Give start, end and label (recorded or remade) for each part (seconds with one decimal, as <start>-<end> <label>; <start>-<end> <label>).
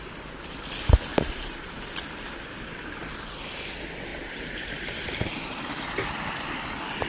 0.0-1.1 recorded; 1.1-1.9 remade; 1.9-4.1 recorded; 4.1-5.1 remade; 5.1-7.1 recorded